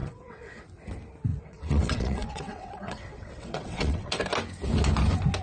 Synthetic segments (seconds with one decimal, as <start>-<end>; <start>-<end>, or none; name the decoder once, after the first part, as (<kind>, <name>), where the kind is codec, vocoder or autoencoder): 0.0-0.6 (vocoder, WaveNeXt); 1.3-4.2